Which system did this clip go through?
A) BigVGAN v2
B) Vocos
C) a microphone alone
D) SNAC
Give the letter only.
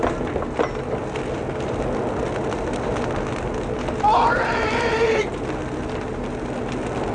C